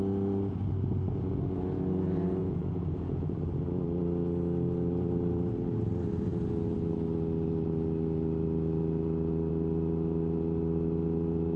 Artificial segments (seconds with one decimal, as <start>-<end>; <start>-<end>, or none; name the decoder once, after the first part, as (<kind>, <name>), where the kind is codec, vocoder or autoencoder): 2.4-3.4 (vocoder, Vocos)